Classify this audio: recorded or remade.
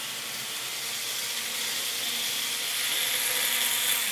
recorded